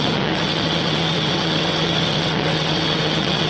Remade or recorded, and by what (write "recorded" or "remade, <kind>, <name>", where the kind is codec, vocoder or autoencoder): remade, vocoder, WaveNeXt